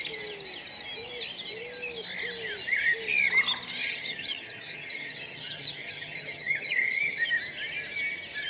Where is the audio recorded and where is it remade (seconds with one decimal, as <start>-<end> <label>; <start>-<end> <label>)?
0.0-3.8 recorded; 3.8-7.3 remade; 7.3-8.5 recorded

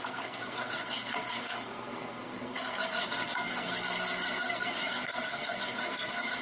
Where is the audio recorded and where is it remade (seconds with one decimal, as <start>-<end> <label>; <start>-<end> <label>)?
0.0-6.4 remade

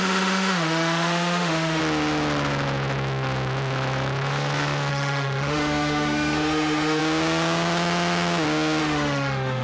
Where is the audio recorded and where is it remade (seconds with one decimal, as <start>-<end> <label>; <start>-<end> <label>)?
0.0-1.8 remade; 1.8-4.9 recorded; 4.9-7.0 remade; 7.0-8.8 recorded; 8.8-9.6 remade